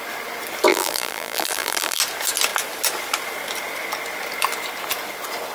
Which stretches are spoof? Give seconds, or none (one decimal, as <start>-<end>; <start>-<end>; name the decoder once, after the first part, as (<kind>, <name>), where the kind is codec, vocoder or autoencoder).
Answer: 0.7-2.0 (vocoder, BigVGAN v2)